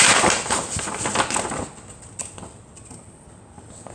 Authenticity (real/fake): real